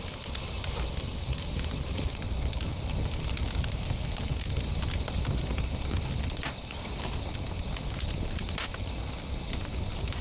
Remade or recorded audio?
recorded